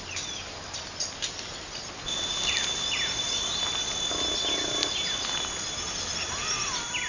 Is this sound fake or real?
real